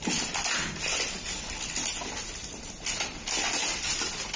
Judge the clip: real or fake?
real